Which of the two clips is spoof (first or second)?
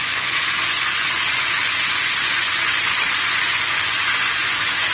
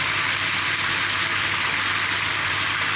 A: first